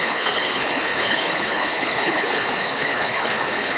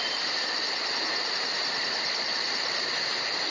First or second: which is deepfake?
first